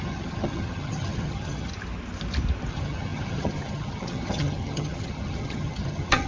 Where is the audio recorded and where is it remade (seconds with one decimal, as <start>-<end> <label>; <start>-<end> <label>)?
0.0-1.7 remade; 1.7-2.7 recorded; 2.7-6.3 remade